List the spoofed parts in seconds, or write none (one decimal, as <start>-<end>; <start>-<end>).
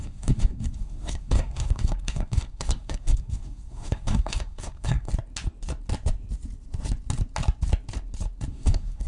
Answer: 0.0-5.1; 8.5-9.1